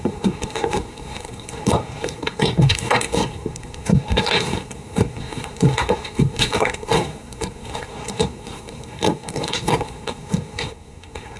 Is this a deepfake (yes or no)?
yes